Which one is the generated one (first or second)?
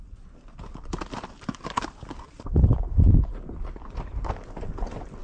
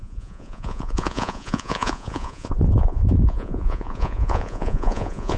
second